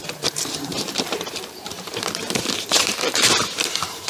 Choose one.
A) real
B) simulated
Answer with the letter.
B